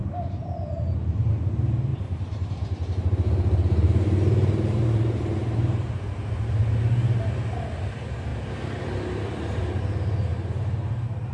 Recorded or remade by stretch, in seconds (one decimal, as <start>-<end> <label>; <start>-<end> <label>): 0.0-1.9 recorded; 1.9-6.3 remade; 6.3-10.3 recorded; 10.3-11.3 remade